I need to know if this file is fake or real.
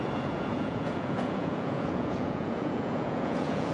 fake